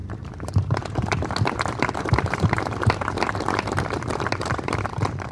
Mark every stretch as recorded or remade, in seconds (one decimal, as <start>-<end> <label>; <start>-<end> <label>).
0.0-5.3 remade